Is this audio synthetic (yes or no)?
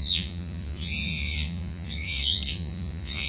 yes